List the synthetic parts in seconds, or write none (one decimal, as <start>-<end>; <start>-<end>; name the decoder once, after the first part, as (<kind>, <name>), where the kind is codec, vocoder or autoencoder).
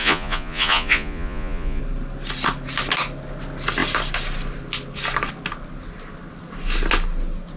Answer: 0.0-1.8 (vocoder, Vocos)